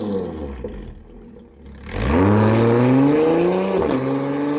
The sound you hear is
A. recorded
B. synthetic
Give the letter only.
A